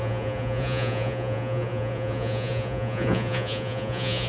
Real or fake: fake